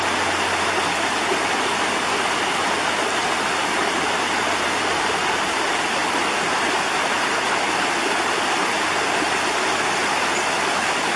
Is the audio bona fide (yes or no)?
yes